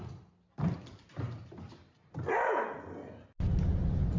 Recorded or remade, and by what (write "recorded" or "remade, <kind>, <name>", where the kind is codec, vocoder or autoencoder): recorded